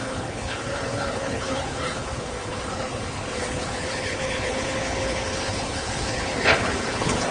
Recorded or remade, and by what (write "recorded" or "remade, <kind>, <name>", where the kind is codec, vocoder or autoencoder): remade, codec, HILCodec